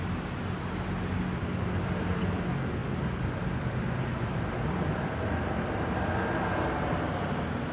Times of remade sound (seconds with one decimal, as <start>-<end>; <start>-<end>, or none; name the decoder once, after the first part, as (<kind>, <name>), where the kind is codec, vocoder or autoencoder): none